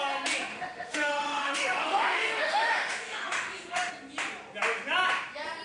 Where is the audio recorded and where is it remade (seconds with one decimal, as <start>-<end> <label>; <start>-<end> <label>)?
0.0-0.5 recorded; 0.5-3.9 remade; 3.9-5.6 recorded